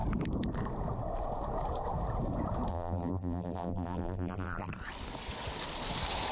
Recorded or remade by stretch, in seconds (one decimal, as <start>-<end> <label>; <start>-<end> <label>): 0.0-2.7 recorded; 2.7-4.7 remade; 4.7-6.3 recorded